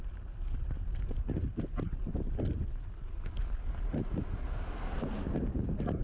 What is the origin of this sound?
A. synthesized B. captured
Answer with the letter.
B